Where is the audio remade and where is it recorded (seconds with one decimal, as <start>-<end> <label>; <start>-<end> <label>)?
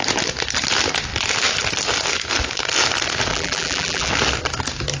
0.0-3.3 recorded; 3.3-4.1 remade; 4.1-5.0 recorded